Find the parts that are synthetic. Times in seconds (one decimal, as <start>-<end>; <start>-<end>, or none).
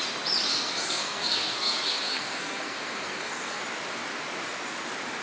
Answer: 0.5-3.6